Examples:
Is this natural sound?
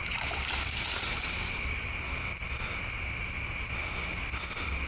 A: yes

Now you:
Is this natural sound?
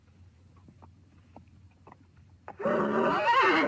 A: yes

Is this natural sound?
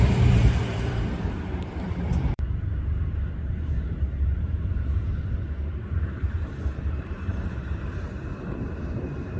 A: no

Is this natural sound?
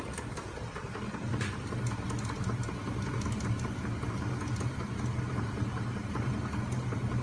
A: yes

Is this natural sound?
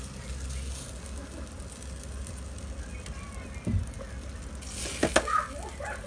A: yes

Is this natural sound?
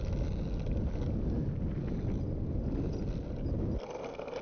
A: yes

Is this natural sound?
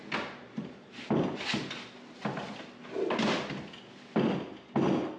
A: yes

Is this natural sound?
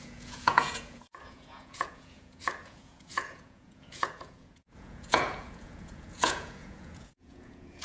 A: no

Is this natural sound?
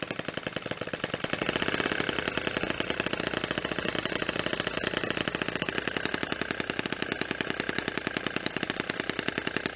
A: yes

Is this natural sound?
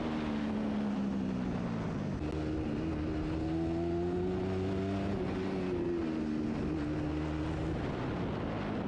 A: yes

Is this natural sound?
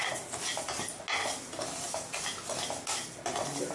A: yes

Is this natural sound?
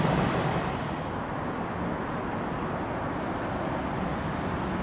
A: yes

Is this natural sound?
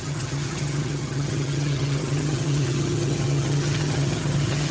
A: no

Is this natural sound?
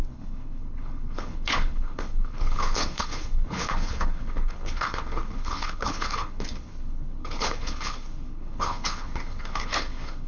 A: no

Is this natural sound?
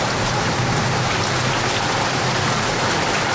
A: yes